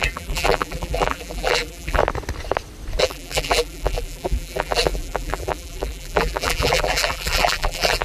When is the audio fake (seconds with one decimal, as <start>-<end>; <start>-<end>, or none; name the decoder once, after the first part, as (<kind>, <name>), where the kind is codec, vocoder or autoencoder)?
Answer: 0.0-2.0 (vocoder, BigVGAN v2); 3.0-8.0